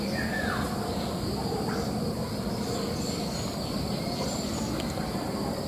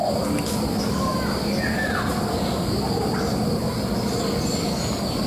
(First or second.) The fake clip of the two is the first